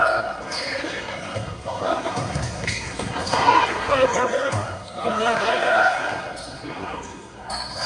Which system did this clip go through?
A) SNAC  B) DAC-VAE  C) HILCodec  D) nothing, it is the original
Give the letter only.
A